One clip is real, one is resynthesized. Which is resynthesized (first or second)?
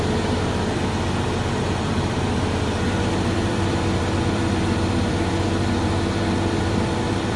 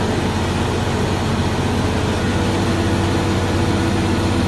first